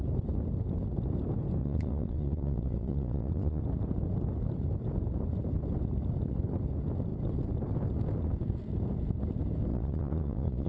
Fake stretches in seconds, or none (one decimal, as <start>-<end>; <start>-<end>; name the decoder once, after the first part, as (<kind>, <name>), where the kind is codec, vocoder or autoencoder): 1.6-3.6 (vocoder, Vocos); 9.7-10.7